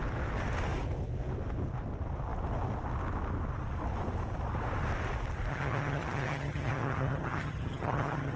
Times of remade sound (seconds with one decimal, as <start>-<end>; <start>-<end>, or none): 5.5-8.4